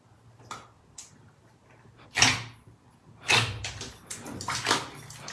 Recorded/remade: recorded